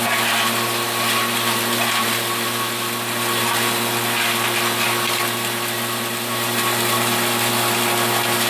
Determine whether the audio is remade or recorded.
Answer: recorded